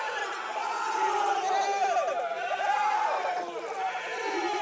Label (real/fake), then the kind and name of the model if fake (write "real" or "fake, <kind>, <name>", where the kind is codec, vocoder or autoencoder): real